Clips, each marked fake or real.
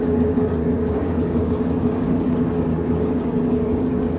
fake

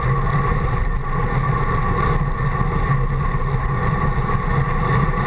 real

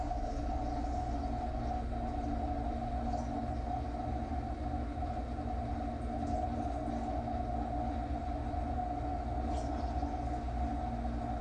real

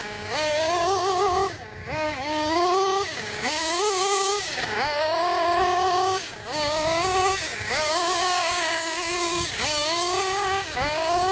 fake